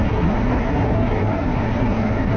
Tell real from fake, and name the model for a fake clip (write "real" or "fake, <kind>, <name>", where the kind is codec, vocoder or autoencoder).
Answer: fake, codec, SNAC